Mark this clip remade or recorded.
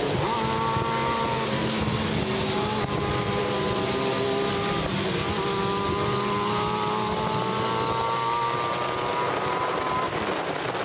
recorded